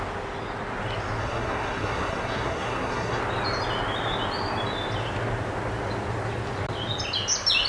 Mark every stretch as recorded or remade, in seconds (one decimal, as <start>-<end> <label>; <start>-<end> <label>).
0.0-1.2 recorded; 1.2-3.2 remade; 3.2-7.7 recorded